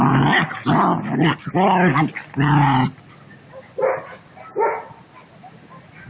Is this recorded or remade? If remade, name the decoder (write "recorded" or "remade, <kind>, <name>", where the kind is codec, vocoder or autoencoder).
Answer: recorded